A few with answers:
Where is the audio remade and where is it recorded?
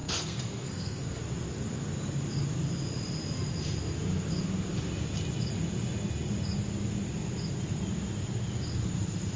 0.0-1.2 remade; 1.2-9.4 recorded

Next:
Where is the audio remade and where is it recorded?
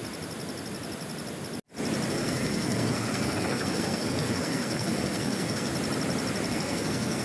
0.0-2.1 recorded; 2.1-5.7 remade; 5.7-6.5 recorded; 6.5-7.2 remade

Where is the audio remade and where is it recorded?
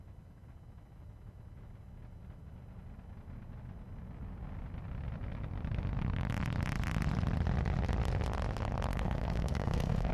0.0-8.9 recorded; 8.9-10.1 remade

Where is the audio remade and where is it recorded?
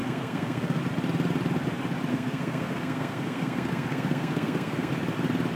0.0-0.8 remade; 0.8-2.1 recorded; 2.1-4.9 remade; 4.9-5.6 recorded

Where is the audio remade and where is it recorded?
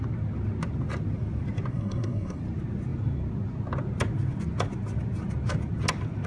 0.0-1.7 recorded; 1.7-2.4 remade; 2.4-6.3 recorded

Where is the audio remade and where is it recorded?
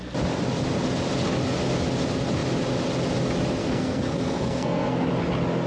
0.0-3.6 recorded; 3.6-5.1 remade; 5.1-5.7 recorded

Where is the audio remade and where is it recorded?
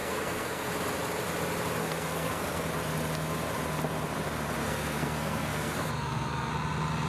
0.0-0.7 remade; 0.7-1.8 recorded; 1.8-2.7 remade; 2.7-4.6 recorded; 4.6-6.5 remade; 6.5-7.1 recorded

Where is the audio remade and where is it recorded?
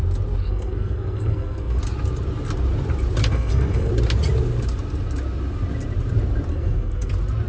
0.0-0.4 recorded; 0.4-1.8 remade; 1.8-3.3 recorded; 3.3-3.9 remade; 3.9-6.5 recorded; 6.5-7.1 remade; 7.1-7.5 recorded